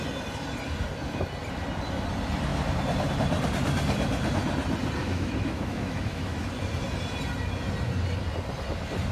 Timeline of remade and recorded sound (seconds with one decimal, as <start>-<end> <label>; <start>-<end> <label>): 0.0-5.0 recorded; 5.0-6.5 remade; 6.5-9.1 recorded